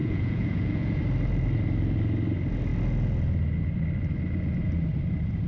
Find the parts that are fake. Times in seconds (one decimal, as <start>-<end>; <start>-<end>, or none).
0.0-1.0